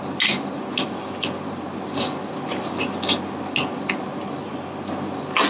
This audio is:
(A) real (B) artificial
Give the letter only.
A